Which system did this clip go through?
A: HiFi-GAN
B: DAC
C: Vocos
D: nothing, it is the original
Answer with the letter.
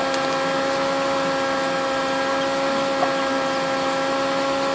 D